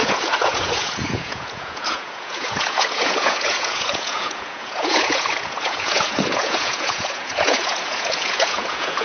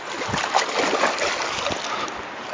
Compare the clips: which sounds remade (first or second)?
first